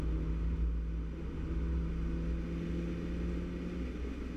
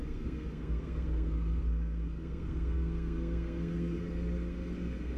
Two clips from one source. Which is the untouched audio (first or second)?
first